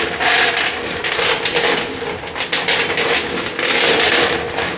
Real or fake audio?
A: real